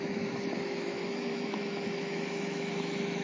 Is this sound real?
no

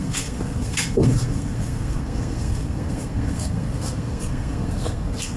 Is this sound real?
no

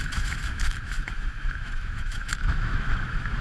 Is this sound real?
no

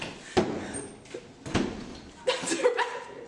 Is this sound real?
yes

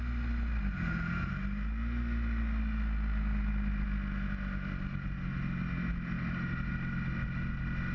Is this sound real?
yes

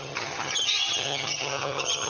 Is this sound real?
no